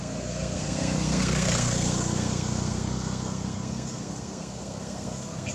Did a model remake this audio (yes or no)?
yes